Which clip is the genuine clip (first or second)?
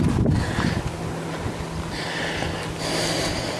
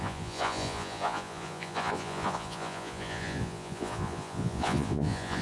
first